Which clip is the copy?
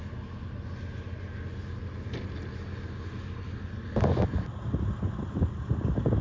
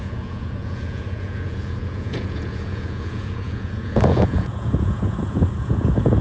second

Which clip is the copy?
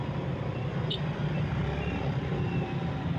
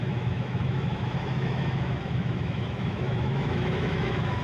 second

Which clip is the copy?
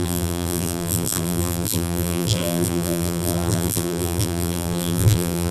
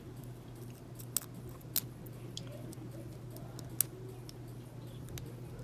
first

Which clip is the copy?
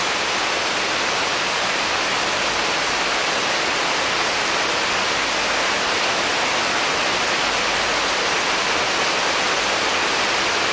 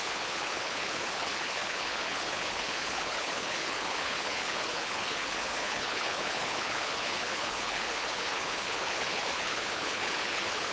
second